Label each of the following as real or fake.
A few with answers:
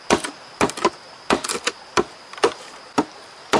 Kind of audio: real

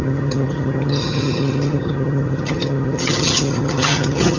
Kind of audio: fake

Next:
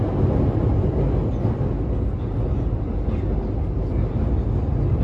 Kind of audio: real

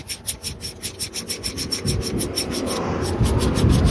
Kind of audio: real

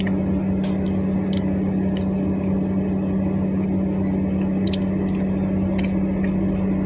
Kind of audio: real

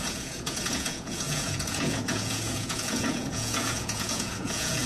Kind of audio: fake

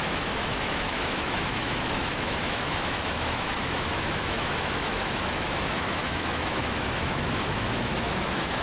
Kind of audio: fake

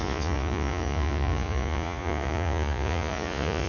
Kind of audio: fake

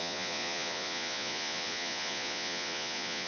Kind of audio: fake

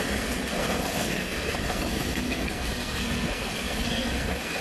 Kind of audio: fake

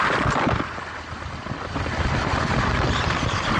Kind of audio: real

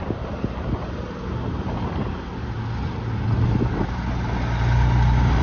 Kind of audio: real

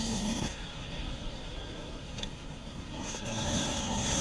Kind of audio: fake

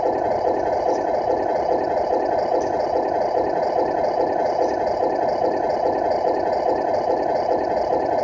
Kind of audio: real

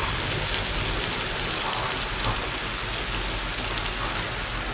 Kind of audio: real